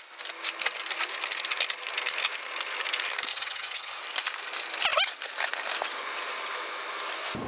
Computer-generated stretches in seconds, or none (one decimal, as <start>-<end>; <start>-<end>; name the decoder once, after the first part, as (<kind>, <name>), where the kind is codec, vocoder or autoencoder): 3.3-4.0 (vocoder, HiFi-GAN)